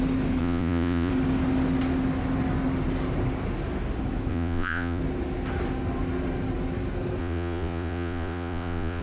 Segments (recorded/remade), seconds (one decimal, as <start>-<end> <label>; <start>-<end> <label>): 0.0-0.4 recorded; 0.4-1.1 remade; 1.1-4.3 recorded; 4.3-5.0 remade; 5.0-7.2 recorded; 7.2-9.0 remade